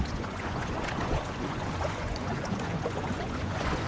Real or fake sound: fake